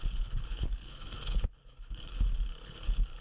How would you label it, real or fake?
fake